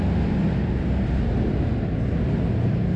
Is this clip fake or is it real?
real